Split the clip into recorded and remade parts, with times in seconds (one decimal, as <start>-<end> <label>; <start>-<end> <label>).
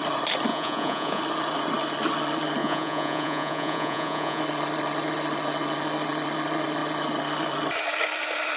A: 0.0-0.5 recorded; 0.5-1.2 remade; 1.2-2.6 recorded; 2.6-4.4 remade; 4.4-8.6 recorded